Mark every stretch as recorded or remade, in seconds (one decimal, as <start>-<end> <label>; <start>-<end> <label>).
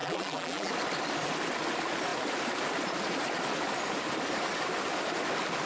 0.0-0.7 remade; 0.7-5.7 recorded